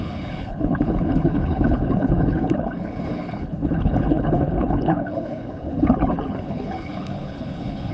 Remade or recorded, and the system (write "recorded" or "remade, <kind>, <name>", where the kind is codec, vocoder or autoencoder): remade, codec, HILCodec